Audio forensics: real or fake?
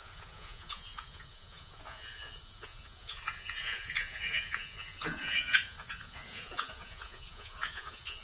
fake